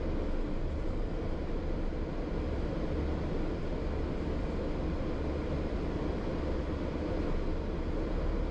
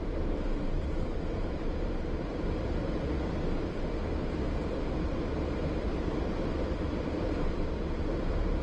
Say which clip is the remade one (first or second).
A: second